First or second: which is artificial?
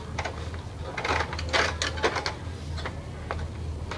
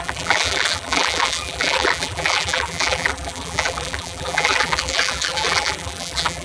second